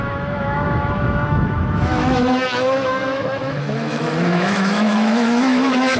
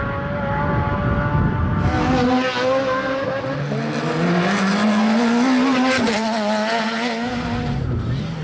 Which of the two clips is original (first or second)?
second